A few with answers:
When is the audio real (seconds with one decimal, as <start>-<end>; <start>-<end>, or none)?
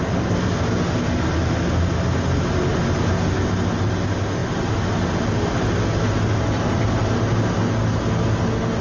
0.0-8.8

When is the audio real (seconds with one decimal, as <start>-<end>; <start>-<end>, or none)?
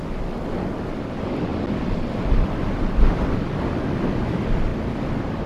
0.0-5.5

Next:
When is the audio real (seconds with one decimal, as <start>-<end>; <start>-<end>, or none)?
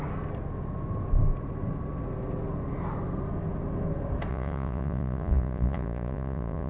0.0-4.3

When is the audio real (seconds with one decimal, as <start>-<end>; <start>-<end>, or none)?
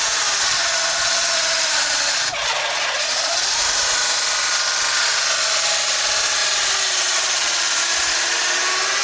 0.0-9.0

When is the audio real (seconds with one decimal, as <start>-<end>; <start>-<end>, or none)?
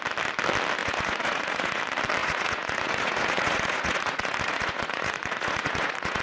0.0-0.8; 1.8-2.2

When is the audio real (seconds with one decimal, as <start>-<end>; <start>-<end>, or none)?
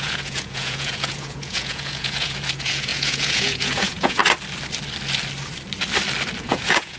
4.2-6.4